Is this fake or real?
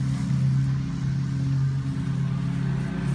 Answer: real